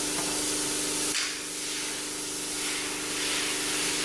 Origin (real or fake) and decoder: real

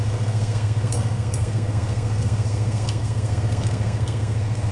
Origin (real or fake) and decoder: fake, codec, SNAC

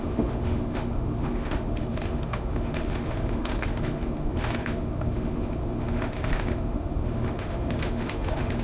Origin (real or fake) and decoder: fake, autoencoder, DAC-VAE